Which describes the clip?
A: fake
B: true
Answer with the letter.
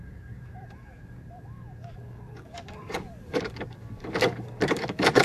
A